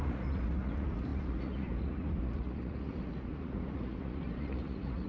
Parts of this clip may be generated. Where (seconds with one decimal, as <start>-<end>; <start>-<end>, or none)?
0.0-5.1